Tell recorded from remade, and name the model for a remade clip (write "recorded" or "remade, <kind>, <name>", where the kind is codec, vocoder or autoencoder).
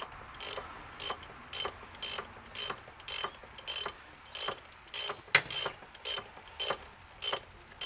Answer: recorded